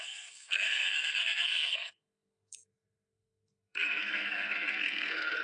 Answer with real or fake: fake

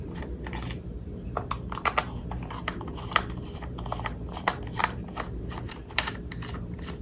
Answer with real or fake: fake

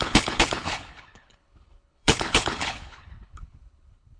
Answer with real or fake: fake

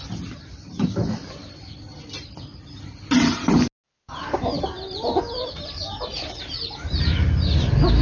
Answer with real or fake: real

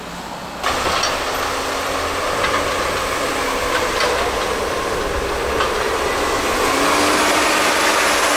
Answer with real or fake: real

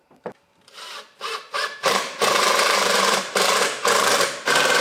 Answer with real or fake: fake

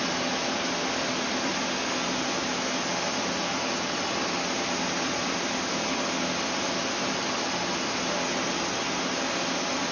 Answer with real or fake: real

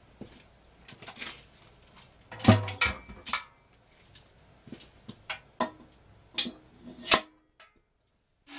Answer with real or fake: real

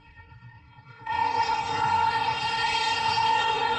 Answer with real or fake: fake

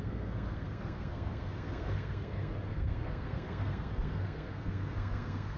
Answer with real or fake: fake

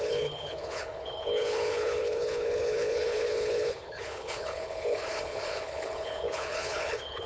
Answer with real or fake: fake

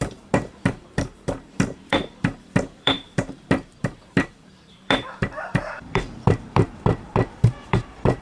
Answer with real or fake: fake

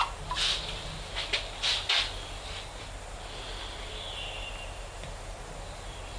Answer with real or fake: real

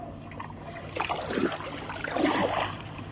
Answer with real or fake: real